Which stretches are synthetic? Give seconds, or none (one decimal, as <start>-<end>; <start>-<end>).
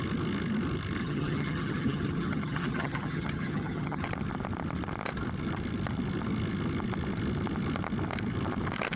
1.0-4.1